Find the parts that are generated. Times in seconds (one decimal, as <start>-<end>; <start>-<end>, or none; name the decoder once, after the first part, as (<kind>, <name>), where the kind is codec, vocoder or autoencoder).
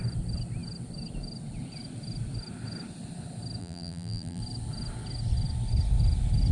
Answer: 3.6-4.4 (vocoder, BigVGAN v2)